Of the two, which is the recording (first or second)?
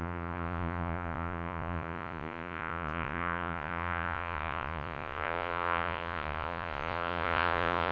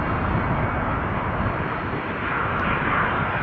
second